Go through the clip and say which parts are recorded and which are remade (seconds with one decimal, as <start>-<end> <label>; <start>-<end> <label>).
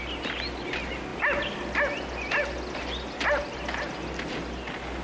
0.0-5.0 recorded